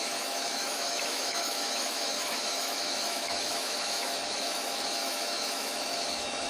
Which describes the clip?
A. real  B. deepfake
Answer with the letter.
B